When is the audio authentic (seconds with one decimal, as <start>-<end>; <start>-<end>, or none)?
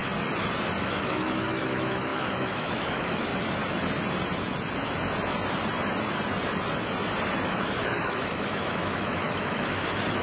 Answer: 0.0-0.8; 3.3-7.5